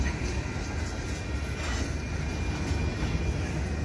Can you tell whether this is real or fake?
real